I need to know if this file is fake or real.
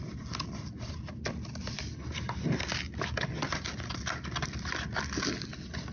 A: real